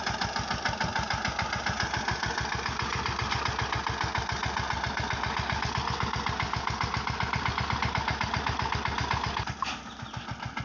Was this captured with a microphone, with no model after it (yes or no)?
yes